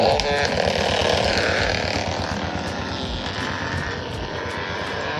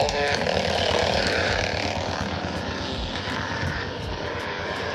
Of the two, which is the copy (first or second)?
second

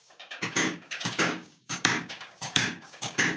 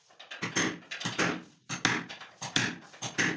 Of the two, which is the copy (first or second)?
first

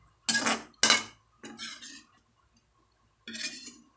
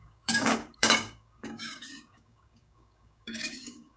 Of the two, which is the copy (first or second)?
second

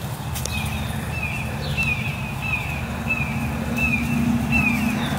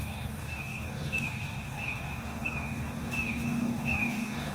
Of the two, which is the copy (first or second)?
second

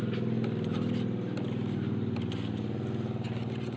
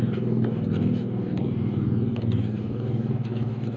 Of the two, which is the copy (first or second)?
second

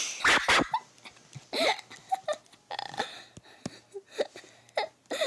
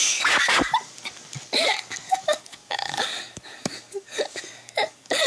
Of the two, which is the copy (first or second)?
second